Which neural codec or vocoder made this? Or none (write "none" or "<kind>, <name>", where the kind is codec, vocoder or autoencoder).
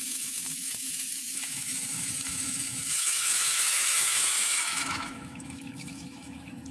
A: autoencoder, DAC-VAE